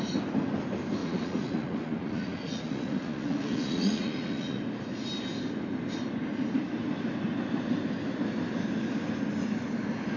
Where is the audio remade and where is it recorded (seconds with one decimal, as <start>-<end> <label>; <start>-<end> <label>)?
0.0-1.0 recorded; 1.0-4.6 remade; 4.6-10.2 recorded